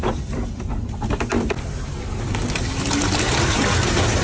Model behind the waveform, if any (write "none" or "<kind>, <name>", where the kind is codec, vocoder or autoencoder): none